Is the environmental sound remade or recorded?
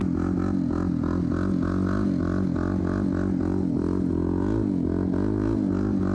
recorded